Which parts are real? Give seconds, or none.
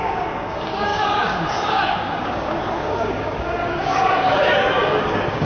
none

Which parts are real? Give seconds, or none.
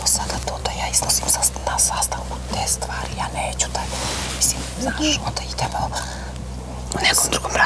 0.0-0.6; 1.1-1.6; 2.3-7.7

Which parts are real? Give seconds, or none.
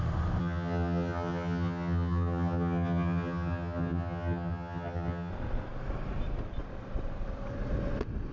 0.0-0.4; 5.3-8.3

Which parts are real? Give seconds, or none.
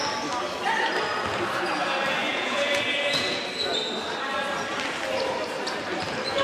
0.0-2.3; 3.4-6.4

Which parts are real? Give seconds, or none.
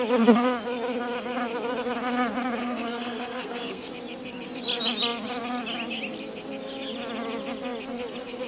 0.0-2.6; 3.9-8.5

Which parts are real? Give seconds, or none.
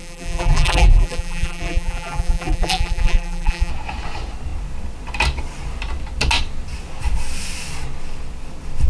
3.7-8.9